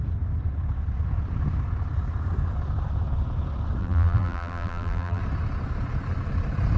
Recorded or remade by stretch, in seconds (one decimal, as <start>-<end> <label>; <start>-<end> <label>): 0.0-3.8 recorded; 3.8-5.2 remade; 5.2-6.8 recorded